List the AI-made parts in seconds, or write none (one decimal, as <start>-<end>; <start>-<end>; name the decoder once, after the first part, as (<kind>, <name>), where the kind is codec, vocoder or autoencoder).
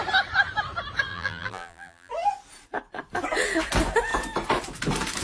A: 1.1-2.1 (vocoder, BigVGAN v2)